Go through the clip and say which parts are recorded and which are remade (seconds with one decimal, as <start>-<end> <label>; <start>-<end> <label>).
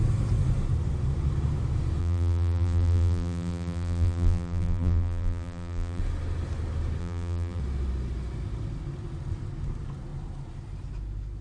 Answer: 0.0-2.0 recorded; 2.0-6.0 remade; 6.0-7.0 recorded; 7.0-7.6 remade; 7.6-11.4 recorded